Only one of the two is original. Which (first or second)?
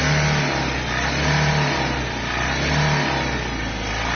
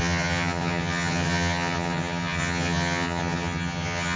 first